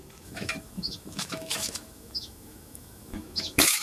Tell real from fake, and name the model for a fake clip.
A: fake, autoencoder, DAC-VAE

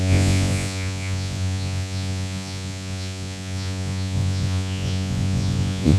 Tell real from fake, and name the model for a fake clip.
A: fake, vocoder, Vocos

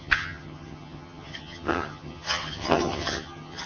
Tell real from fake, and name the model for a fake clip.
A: fake, vocoder, HiFi-GAN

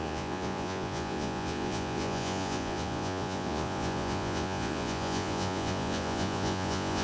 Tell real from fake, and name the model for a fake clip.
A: fake, vocoder, Vocos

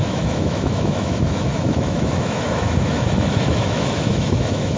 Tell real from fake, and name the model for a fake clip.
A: fake, autoencoder, DAC-VAE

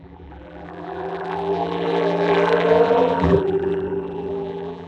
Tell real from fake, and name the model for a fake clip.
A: fake, vocoder, BigVGAN v2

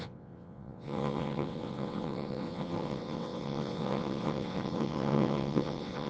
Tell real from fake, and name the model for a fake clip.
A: fake, vocoder, WaveNeXt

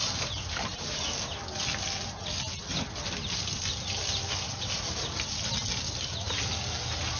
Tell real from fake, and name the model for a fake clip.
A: real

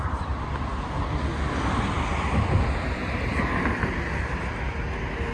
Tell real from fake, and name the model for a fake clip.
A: real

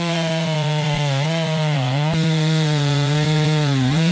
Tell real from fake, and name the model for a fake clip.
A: fake, vocoder, Vocos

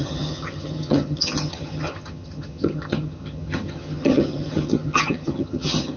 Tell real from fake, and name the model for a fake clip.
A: fake, vocoder, HiFi-GAN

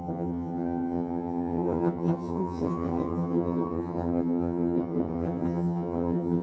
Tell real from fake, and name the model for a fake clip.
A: fake, vocoder, HiFi-GAN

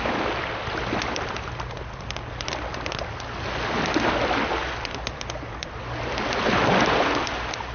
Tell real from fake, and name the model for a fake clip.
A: real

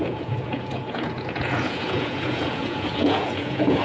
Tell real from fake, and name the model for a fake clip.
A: fake, vocoder, Vocos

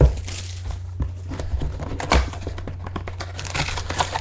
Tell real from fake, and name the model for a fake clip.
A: real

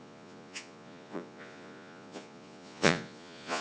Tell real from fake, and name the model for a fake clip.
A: fake, vocoder, Vocos